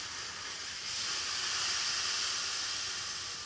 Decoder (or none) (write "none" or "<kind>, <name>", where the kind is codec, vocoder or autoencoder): none